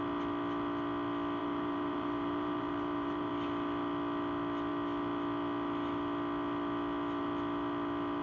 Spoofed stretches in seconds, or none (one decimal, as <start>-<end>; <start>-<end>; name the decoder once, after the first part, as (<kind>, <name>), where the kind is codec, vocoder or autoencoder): 1.4-3.3 (vocoder, BigVGAN v2)